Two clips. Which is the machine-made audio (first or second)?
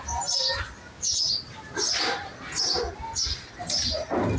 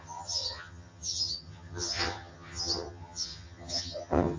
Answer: second